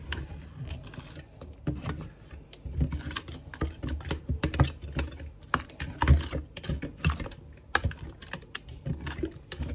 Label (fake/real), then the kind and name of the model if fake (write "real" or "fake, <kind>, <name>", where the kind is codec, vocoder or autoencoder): real